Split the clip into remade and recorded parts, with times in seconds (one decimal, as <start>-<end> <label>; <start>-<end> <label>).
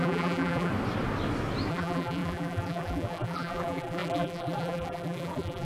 0.0-0.7 remade; 0.7-1.7 recorded; 1.7-5.6 remade